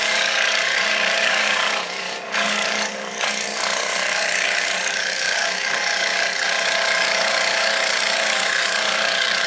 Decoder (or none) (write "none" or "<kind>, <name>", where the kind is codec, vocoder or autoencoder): codec, DAC